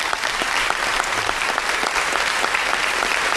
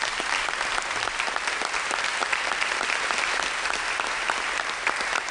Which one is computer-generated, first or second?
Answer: second